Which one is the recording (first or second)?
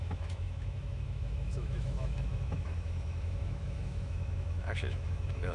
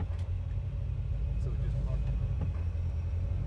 second